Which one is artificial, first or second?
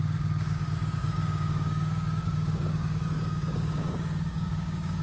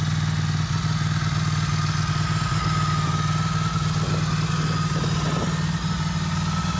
first